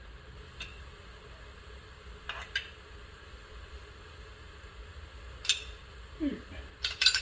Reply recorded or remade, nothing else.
recorded